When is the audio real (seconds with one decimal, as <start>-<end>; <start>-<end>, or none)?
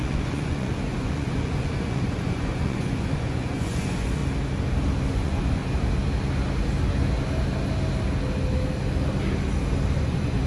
4.2-5.1; 5.6-10.0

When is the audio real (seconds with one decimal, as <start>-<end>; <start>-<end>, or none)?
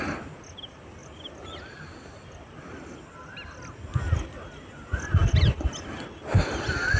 0.0-7.0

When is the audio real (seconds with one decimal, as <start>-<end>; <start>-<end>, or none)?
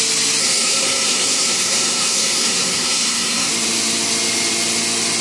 0.0-0.4; 3.5-5.2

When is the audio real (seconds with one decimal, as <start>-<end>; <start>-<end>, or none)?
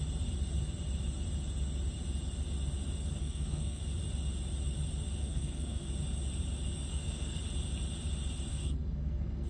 0.0-3.2; 3.8-5.2; 5.9-6.9; 7.4-8.5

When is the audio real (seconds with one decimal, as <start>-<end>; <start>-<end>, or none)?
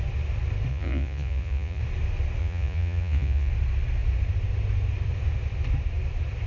0.0-0.7; 1.8-2.4; 3.5-6.5